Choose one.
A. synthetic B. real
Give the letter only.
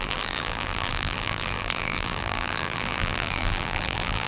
A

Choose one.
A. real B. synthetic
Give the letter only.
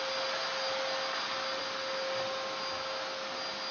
A